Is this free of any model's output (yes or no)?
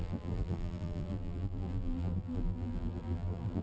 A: no